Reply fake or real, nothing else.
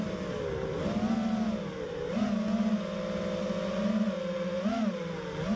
real